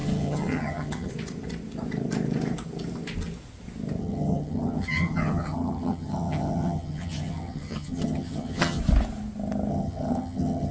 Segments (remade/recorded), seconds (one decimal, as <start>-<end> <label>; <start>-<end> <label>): 0.0-1.1 remade; 1.1-4.0 recorded; 4.0-8.8 remade; 8.8-9.7 recorded; 9.7-10.7 remade

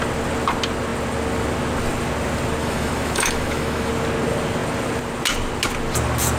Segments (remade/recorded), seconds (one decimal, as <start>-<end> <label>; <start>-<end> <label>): 0.0-2.6 recorded; 2.6-3.9 remade; 3.9-6.4 recorded